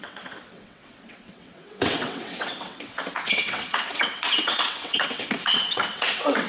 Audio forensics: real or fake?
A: fake